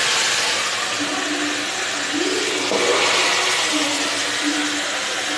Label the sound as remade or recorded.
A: recorded